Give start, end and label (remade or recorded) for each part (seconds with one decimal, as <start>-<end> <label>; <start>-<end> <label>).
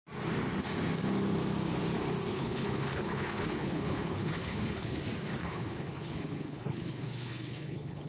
0.0-2.3 recorded; 2.3-5.0 remade; 5.0-5.4 recorded; 5.4-8.1 remade